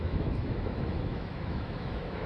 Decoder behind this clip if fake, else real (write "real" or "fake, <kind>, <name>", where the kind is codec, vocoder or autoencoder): fake, autoencoder, DAC-VAE